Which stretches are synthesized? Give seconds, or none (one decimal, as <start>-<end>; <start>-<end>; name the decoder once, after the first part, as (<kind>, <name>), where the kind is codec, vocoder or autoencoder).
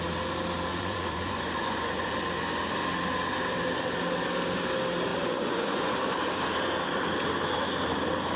0.7-2.1 (vocoder, Vocos); 5.1-5.9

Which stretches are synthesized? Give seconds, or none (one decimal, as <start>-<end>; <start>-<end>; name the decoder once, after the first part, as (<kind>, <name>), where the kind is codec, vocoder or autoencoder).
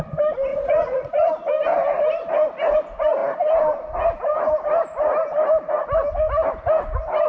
0.5-1.3 (vocoder, Vocos)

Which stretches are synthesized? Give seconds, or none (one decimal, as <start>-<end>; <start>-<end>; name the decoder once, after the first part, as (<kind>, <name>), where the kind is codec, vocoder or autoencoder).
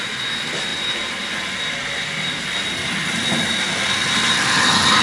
none